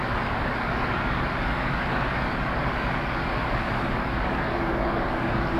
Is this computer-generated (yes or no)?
yes